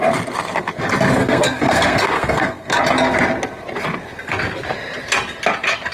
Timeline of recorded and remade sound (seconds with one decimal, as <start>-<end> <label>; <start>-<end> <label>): 0.0-1.2 recorded; 1.2-2.8 remade; 2.8-5.9 recorded